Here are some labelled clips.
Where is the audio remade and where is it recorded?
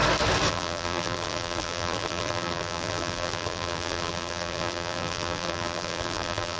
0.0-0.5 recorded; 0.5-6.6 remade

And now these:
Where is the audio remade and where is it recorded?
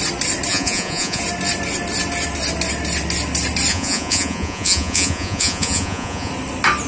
0.0-0.5 recorded; 0.5-1.2 remade; 1.2-3.7 recorded; 3.7-6.3 remade; 6.3-6.9 recorded